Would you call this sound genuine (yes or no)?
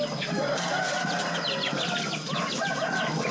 yes